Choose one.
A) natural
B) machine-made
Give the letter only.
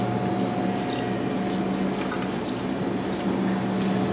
A